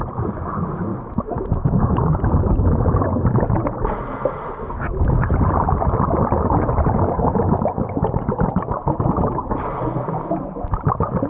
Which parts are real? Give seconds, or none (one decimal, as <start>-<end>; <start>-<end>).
0.0-0.9; 2.3-11.3